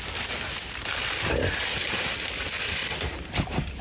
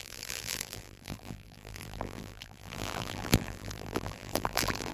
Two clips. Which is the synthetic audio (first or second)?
second